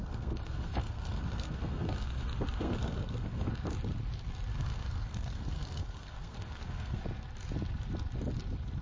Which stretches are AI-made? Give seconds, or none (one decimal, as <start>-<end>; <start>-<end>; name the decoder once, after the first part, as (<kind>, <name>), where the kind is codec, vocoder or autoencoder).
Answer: 0.0-3.5 (codec, SNAC); 4.5-7.0